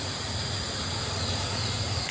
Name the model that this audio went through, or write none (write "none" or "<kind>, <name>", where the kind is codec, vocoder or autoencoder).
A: vocoder, Vocos